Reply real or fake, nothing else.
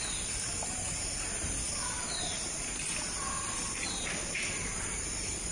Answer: real